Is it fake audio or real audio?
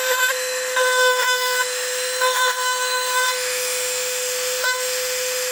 fake